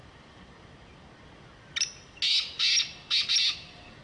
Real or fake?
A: real